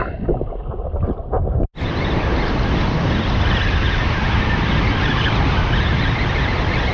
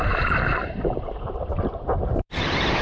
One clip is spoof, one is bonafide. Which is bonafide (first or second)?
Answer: first